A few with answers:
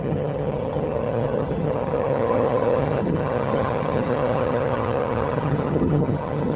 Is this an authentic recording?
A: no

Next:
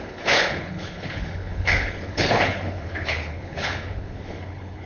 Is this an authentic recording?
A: no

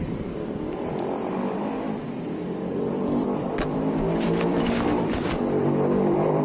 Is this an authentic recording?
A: no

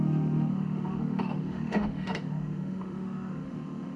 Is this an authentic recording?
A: no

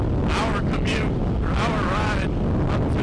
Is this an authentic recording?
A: yes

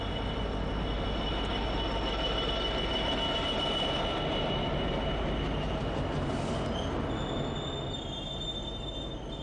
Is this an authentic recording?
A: yes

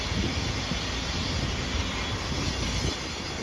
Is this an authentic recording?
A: yes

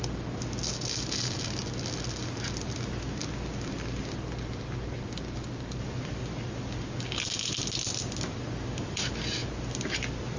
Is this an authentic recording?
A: yes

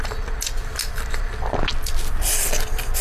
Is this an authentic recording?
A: yes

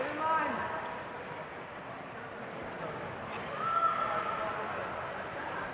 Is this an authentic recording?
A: yes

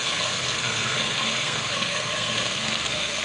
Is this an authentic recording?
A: no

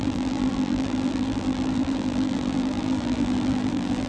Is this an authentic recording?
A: no